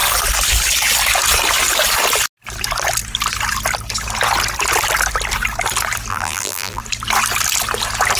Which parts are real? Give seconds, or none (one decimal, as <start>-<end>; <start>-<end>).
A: 0.0-6.1; 6.8-8.2